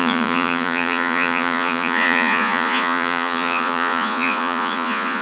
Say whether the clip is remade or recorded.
remade